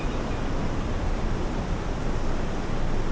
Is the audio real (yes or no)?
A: yes